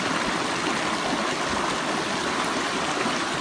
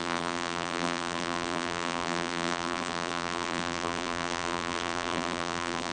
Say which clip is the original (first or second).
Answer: first